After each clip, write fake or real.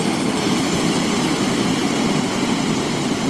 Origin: fake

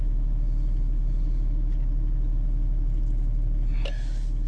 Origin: real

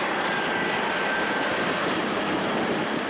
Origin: fake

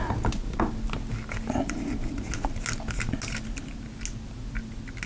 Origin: real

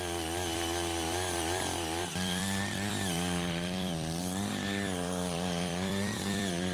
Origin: fake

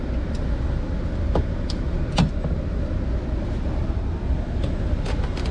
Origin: real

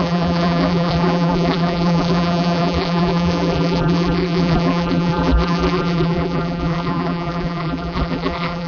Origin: fake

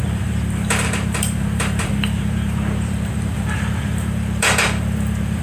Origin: fake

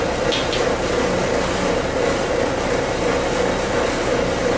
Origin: real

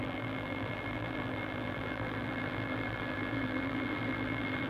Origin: fake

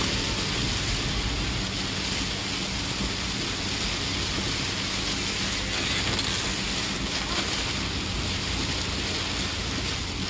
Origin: real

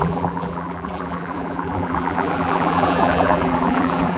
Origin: fake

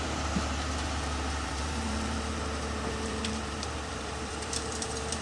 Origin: fake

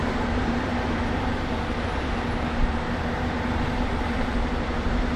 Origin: fake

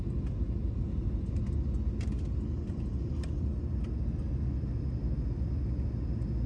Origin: real